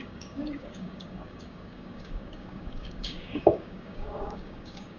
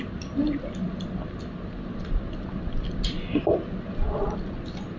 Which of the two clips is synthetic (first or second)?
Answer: first